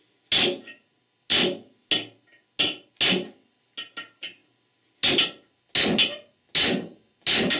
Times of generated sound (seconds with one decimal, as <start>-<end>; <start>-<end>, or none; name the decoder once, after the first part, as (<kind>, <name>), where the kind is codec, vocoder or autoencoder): none